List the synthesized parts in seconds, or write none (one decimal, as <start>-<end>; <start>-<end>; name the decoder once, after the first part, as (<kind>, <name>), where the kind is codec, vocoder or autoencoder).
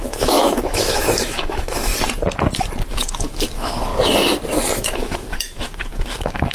0.0-1.9 (autoencoder, DAC-VAE); 2.9-3.9; 4.8-6.5